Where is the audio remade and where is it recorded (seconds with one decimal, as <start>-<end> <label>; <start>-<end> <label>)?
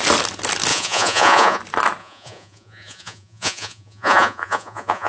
0.0-0.7 recorded; 0.7-1.6 remade; 1.6-2.0 recorded; 2.0-5.1 remade